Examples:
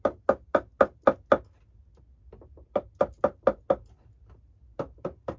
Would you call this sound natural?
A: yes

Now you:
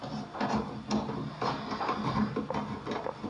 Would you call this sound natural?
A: yes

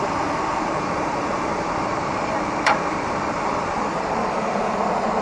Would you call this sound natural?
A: no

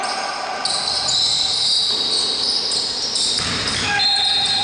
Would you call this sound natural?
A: yes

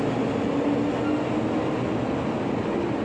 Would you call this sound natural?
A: yes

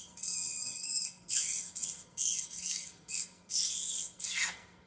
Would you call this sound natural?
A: no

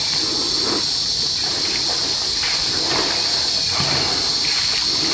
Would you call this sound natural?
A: yes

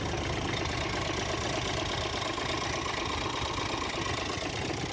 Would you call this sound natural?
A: yes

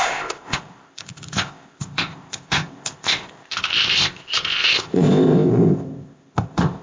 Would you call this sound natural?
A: no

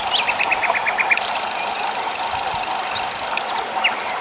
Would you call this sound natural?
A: yes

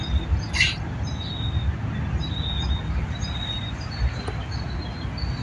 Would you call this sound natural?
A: yes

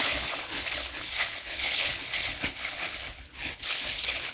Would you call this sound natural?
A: no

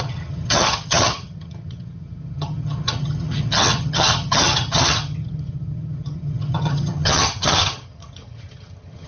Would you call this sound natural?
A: no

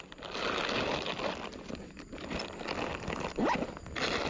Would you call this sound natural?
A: yes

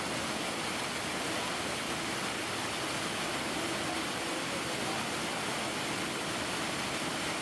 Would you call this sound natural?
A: yes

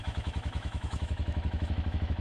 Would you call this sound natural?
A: no